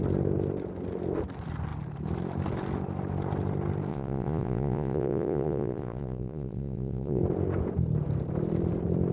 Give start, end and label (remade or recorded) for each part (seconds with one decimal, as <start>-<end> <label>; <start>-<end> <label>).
0.0-3.9 recorded; 3.9-7.2 remade; 7.2-9.1 recorded